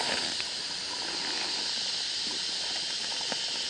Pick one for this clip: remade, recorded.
recorded